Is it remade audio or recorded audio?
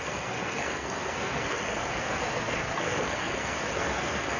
remade